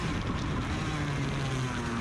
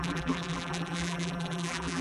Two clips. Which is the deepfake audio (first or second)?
second